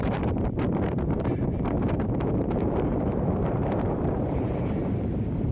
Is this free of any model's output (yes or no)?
no